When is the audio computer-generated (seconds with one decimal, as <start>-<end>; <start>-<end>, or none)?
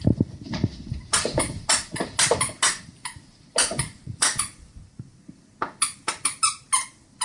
3.6-4.8